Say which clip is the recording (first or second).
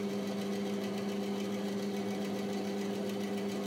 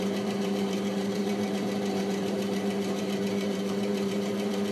first